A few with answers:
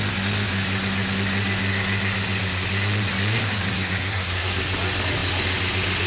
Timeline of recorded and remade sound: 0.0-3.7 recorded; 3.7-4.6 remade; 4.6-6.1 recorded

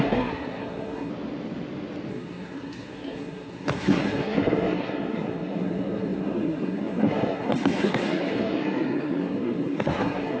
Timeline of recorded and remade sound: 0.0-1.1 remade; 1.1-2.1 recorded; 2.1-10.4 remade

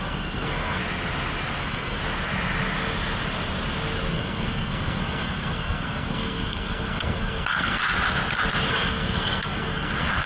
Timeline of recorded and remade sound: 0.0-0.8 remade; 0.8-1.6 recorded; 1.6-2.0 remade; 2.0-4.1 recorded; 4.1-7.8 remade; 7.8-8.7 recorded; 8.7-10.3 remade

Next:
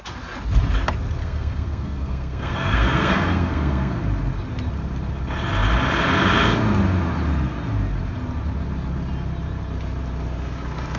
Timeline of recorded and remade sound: 0.0-1.2 recorded; 1.2-4.0 remade; 4.0-11.0 recorded